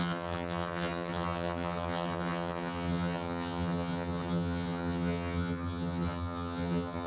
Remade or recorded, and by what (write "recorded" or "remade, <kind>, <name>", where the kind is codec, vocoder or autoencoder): remade, vocoder, HiFi-GAN